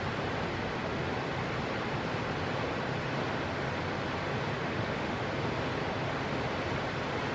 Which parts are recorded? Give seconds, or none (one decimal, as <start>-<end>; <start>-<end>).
0.0-4.7; 5.2-7.3